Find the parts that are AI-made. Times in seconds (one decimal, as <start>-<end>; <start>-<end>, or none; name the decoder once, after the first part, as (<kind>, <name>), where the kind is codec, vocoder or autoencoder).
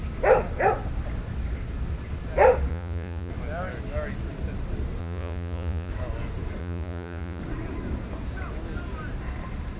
2.7-3.3 (vocoder, Vocos); 5.0-5.9; 6.6-7.4